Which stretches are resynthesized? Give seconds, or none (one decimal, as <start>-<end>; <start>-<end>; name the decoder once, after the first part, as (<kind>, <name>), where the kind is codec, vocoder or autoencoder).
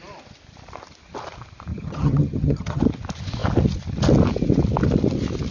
1.7-2.8 (vocoder, HiFi-GAN)